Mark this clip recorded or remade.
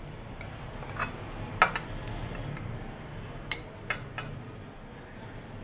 recorded